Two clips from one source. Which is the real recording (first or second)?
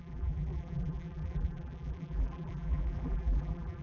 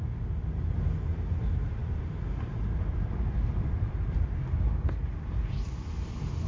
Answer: second